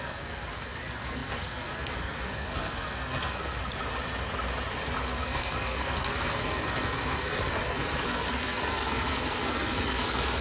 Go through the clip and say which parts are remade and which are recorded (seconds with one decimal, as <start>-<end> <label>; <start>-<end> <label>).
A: 0.0-3.6 remade; 3.6-5.0 recorded; 5.0-10.4 remade